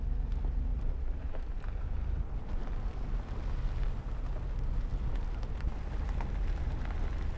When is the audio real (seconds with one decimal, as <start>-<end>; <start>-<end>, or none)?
0.0-0.7; 2.2-7.4